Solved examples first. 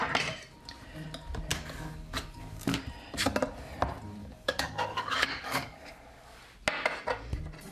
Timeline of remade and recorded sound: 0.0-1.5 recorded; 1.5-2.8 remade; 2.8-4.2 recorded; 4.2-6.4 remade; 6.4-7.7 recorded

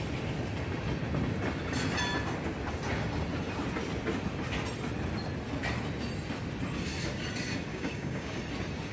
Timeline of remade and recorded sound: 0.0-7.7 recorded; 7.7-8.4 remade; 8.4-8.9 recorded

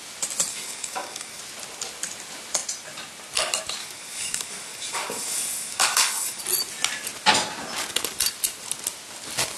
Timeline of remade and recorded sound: 0.0-0.5 recorded; 0.5-1.4 remade; 1.4-3.8 recorded; 3.8-6.4 remade; 6.4-9.6 recorded

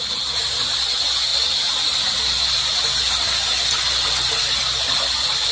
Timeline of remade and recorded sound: 0.0-5.5 recorded